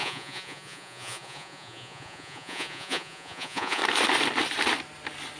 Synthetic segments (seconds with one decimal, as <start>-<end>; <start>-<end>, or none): 0.0-3.8